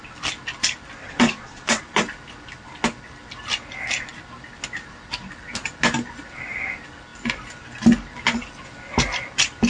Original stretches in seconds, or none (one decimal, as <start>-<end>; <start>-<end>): 0.0-1.0; 1.8-9.7